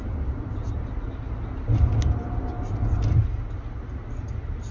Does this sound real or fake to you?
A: real